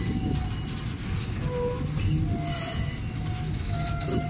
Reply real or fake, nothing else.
real